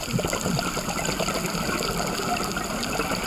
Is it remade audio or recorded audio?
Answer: recorded